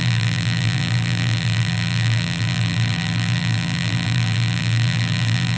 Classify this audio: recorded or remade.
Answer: remade